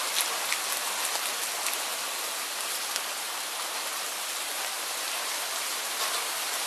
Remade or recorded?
recorded